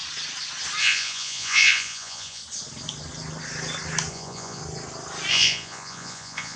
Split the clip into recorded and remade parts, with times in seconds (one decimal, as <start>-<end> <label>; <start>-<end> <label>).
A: 0.0-0.8 recorded; 0.8-2.4 remade; 2.4-4.1 recorded; 4.1-4.6 remade; 4.6-5.3 recorded; 5.3-6.6 remade